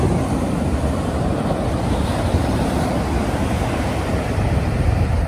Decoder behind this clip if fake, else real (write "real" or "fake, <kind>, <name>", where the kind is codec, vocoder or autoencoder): fake, vocoder, BigVGAN v2